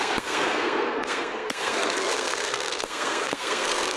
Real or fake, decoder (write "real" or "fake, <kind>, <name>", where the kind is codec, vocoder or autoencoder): fake, codec, SNAC